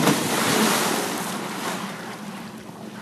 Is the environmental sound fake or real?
real